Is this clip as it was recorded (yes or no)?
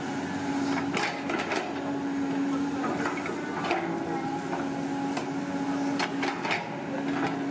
yes